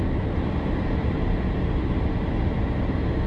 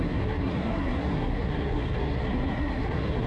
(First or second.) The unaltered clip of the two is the first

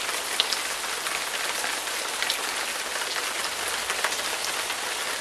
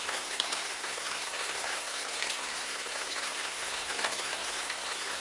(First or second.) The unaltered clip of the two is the first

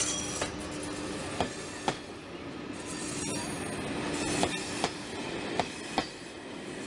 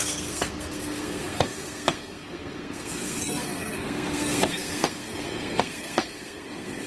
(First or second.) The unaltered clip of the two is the first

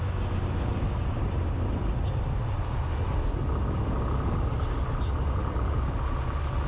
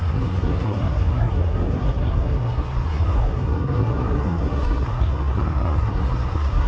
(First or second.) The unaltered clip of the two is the first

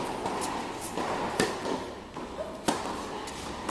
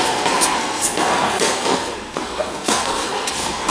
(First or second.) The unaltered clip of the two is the first